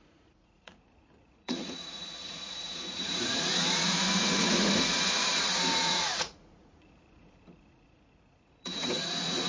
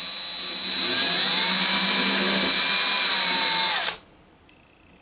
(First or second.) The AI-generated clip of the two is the first